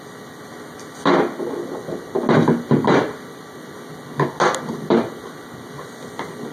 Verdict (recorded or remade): recorded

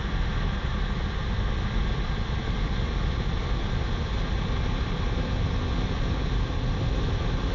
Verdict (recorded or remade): recorded